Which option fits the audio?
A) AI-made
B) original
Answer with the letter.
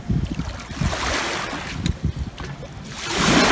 B